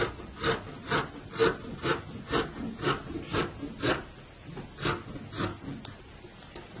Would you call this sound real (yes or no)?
yes